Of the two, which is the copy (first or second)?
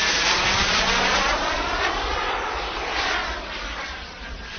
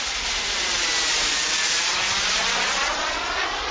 first